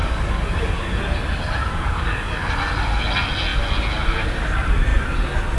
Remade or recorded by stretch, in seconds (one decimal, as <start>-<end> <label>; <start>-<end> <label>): 0.0-1.0 remade; 1.0-1.7 recorded; 1.7-2.5 remade; 2.5-5.6 recorded